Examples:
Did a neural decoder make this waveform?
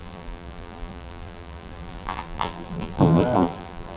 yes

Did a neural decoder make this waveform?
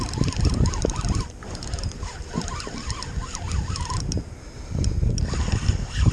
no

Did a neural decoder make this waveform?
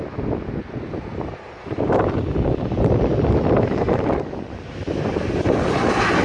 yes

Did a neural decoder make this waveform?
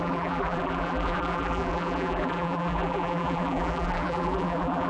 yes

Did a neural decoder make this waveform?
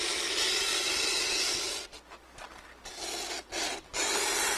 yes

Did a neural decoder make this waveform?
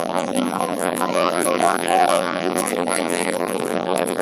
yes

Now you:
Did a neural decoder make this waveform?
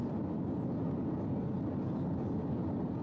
no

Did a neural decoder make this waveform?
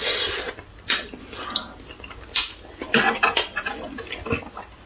no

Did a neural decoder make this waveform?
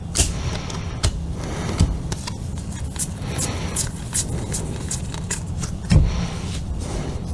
yes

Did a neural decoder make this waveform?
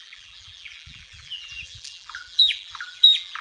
yes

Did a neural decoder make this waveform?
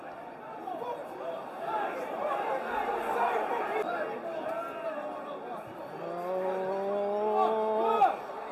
no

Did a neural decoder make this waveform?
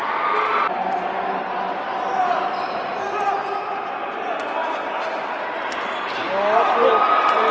no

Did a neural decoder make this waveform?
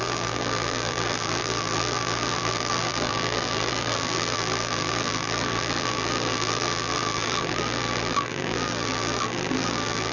yes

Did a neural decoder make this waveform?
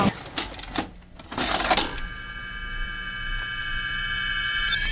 no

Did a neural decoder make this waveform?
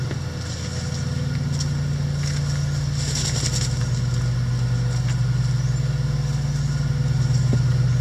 no